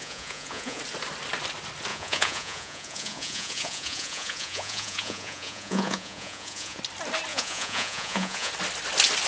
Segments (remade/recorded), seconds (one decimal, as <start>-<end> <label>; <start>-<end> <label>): 0.0-0.8 remade; 0.8-1.9 recorded; 1.9-6.8 remade; 6.8-7.3 recorded; 7.3-8.5 remade; 8.5-9.3 recorded